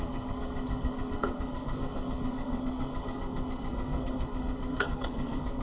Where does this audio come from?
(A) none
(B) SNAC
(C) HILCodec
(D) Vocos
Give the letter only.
B